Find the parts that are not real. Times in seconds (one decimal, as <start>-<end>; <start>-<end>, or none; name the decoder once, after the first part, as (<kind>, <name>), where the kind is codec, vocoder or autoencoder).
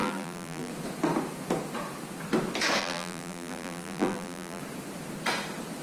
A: 0.0-0.7 (vocoder, BigVGAN v2); 2.8-4.6